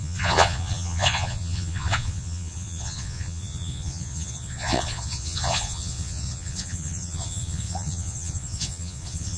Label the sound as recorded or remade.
remade